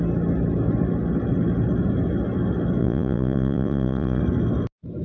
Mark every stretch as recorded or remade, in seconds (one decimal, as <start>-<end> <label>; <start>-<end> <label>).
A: 0.0-2.8 recorded; 2.8-4.2 remade; 4.2-5.0 recorded